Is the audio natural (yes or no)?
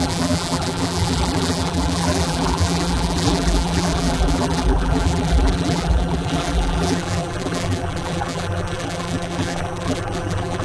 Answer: no